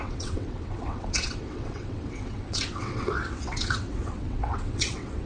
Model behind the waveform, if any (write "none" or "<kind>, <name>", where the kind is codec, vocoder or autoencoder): vocoder, WaveNeXt